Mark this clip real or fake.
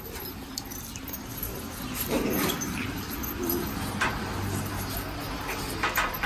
real